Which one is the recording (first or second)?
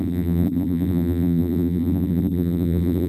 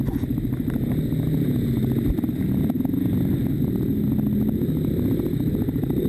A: second